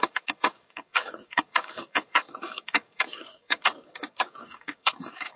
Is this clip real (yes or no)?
no